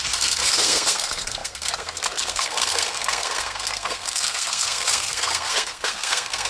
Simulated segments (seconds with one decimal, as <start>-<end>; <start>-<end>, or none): 0.0-6.5